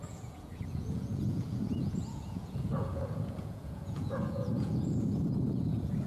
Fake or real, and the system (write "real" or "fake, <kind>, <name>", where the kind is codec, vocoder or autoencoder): fake, vocoder, Vocos